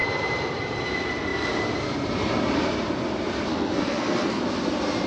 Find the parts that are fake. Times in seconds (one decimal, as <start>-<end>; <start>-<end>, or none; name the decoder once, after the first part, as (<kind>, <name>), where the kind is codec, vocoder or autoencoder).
3.5-4.4 (codec, SNAC)